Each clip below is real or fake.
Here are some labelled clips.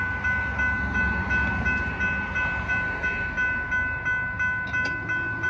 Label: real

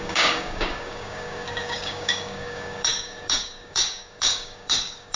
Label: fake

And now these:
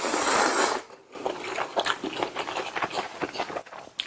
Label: real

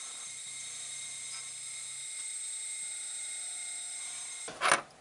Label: real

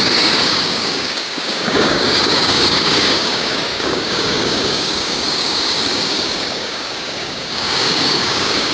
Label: fake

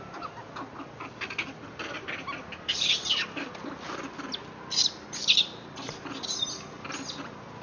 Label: real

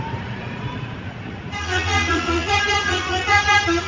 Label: fake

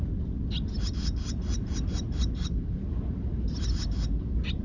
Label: real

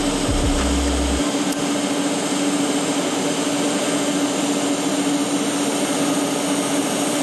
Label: real